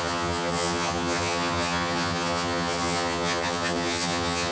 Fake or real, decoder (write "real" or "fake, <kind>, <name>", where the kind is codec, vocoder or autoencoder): fake, vocoder, HiFi-GAN